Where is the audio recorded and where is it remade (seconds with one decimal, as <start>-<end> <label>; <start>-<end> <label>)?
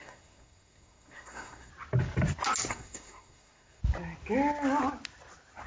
0.0-1.7 remade; 1.7-2.7 recorded; 2.7-3.8 remade; 3.8-5.7 recorded